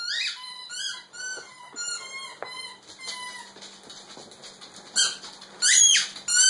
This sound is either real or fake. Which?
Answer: real